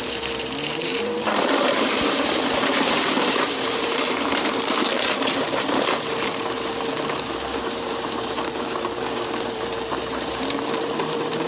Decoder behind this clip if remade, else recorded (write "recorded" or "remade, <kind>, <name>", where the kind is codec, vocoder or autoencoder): remade, vocoder, BigVGAN v2